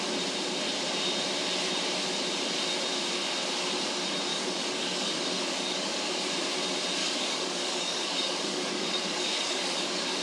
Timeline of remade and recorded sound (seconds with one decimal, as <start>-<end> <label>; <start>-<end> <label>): 0.0-4.3 recorded; 4.3-6.2 remade; 6.2-7.0 recorded; 7.0-10.2 remade

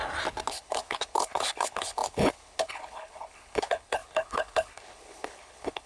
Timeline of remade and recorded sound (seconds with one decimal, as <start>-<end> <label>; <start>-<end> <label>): 0.0-0.5 recorded; 0.5-5.9 remade

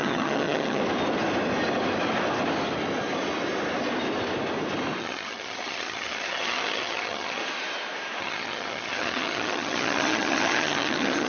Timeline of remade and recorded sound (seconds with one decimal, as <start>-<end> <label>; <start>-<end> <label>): 0.0-0.8 remade; 0.8-5.0 recorded; 5.0-7.4 remade; 7.4-8.2 recorded; 8.2-11.3 remade

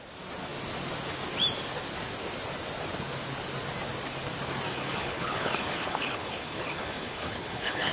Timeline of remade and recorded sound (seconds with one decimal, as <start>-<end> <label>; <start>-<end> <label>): 0.0-4.7 recorded; 4.7-7.9 remade

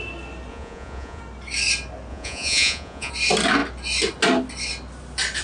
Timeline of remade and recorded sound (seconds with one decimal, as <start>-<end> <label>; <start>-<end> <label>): 0.0-0.5 recorded; 0.5-1.2 remade; 1.2-2.1 recorded; 2.1-3.1 remade; 3.1-5.4 recorded

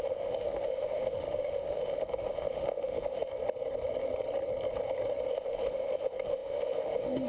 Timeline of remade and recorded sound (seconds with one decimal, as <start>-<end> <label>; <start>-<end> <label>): 0.0-3.3 remade; 3.3-5.3 recorded; 5.3-7.3 remade

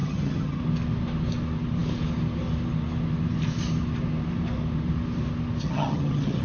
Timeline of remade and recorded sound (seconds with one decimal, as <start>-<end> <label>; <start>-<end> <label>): 0.0-0.6 remade; 0.6-5.6 recorded; 5.6-6.4 remade